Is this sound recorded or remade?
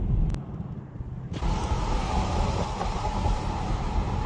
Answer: recorded